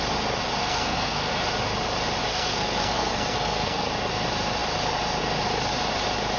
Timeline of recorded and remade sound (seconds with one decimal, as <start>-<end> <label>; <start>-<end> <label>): 0.0-0.6 recorded; 0.6-1.3 remade; 1.3-2.3 recorded; 2.3-3.9 remade; 3.9-6.4 recorded